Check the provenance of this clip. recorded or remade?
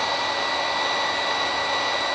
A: recorded